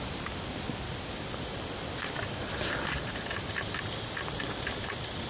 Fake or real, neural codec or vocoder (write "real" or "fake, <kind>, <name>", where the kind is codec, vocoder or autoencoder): real